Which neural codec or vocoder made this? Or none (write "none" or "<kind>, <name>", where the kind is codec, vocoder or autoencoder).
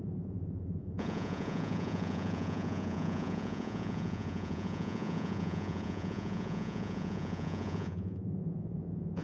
vocoder, Vocos